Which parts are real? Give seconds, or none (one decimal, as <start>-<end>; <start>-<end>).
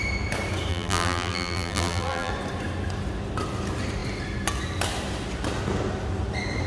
0.0-0.7; 2.3-6.7